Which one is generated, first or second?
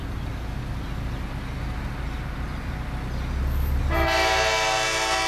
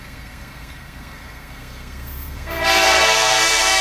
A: second